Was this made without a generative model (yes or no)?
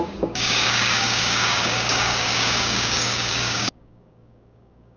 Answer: no